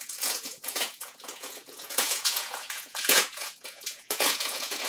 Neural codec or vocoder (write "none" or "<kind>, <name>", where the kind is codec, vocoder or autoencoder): vocoder, Vocos